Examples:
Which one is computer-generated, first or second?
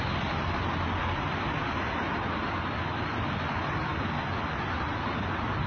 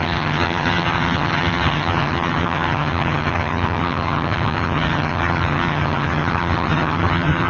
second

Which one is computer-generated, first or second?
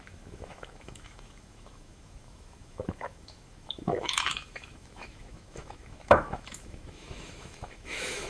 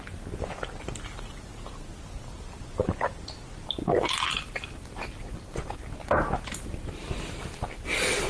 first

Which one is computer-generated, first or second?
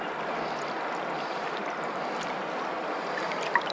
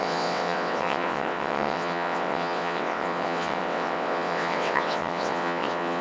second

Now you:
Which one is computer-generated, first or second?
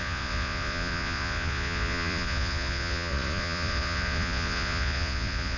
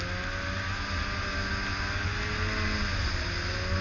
first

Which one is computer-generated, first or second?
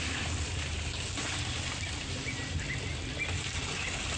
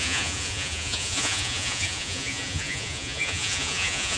second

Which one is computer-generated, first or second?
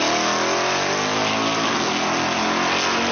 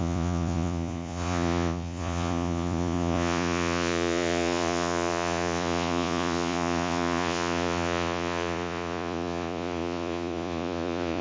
second